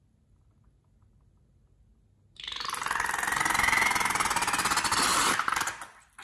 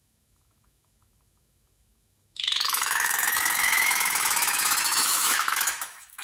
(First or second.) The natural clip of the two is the first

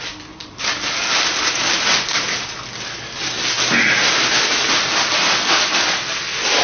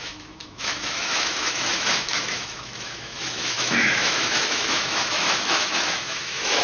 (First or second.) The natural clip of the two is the first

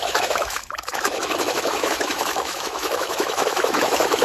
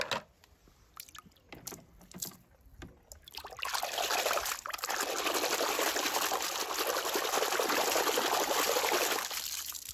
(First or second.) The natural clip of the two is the second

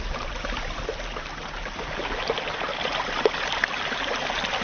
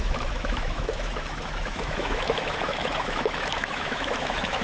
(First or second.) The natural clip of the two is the first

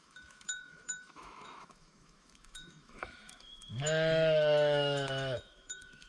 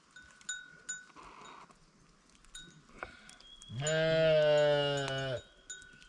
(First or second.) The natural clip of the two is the second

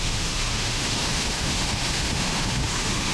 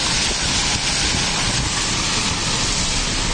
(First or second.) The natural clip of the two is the second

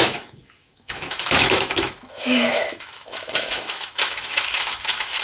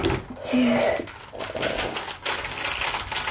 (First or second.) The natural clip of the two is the second